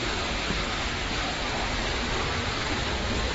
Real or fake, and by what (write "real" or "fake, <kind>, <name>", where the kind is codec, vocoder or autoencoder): real